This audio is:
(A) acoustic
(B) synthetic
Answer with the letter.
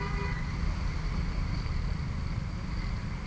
A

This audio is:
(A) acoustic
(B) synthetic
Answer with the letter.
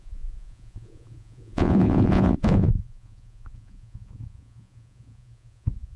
B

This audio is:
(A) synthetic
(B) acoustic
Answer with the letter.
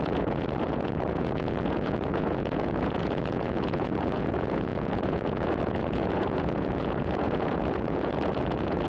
A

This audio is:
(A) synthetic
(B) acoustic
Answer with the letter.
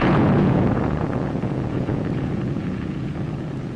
A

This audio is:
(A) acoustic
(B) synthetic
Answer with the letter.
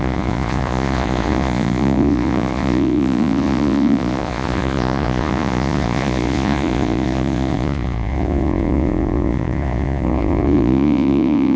B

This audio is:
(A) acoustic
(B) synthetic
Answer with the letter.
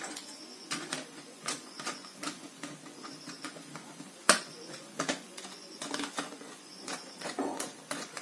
B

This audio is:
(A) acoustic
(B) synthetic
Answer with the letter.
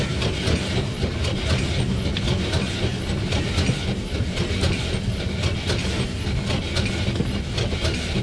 A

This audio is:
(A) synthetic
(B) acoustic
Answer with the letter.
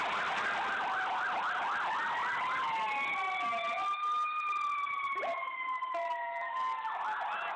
B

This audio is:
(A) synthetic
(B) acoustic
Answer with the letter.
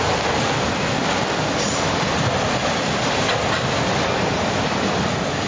B